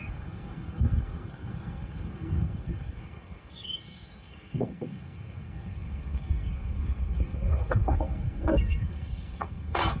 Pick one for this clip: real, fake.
fake